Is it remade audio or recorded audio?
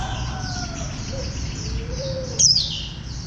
remade